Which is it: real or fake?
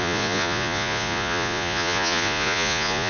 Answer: fake